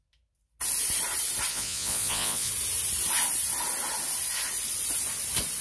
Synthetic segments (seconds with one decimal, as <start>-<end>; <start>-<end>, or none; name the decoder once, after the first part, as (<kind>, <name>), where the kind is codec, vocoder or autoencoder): 1.5-2.5 (vocoder, Vocos)